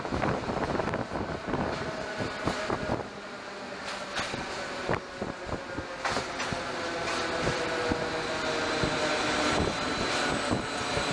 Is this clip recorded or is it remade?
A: recorded